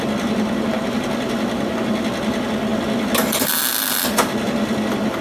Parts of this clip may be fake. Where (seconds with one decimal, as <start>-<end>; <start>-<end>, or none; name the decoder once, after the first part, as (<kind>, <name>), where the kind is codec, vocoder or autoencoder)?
none